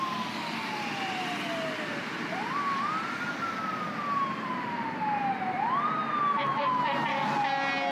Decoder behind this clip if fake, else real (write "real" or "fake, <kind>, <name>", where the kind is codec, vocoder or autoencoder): real